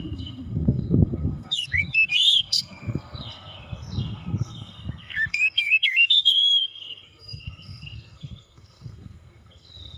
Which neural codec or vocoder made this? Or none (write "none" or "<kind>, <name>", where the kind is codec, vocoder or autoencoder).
codec, SNAC